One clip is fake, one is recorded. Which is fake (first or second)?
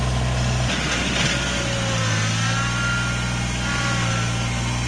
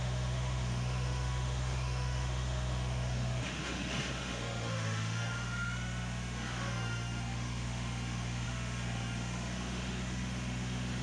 second